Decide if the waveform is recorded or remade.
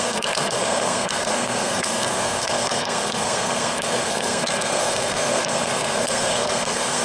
remade